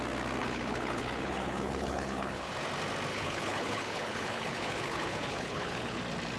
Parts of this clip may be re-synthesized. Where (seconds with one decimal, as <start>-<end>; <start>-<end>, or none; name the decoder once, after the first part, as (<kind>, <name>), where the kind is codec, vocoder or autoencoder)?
0.4-2.5 (codec, HILCodec); 3.1-6.0